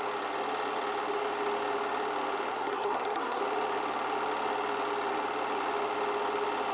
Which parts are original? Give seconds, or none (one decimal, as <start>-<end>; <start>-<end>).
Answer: 0.0-2.5; 3.4-6.7